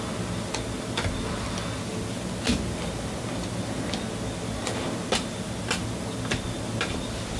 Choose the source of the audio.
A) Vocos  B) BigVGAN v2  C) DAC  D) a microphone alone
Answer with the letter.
D